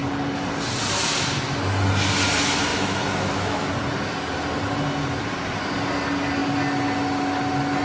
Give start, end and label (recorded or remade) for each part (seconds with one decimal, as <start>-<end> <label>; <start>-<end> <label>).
0.0-2.7 recorded; 2.7-3.7 remade; 3.7-7.8 recorded